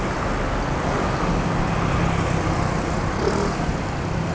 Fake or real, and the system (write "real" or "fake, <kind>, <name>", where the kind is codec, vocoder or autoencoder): real